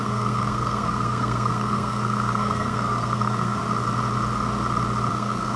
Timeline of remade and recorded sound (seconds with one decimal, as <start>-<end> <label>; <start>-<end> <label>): 0.0-3.6 remade; 3.6-5.1 recorded; 5.1-5.6 remade